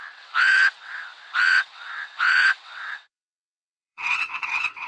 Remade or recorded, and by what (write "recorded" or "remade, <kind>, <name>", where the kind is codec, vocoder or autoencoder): remade, vocoder, WaveNeXt